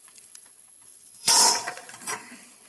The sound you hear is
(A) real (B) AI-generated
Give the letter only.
B